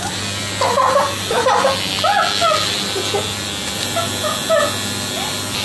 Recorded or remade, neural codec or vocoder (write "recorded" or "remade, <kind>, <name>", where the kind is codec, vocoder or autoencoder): recorded